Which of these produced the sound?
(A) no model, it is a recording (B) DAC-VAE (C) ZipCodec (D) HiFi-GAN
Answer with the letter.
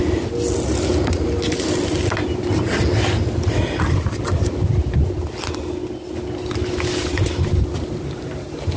A